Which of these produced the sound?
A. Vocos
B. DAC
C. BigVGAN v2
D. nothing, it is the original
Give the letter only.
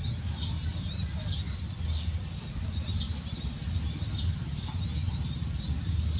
D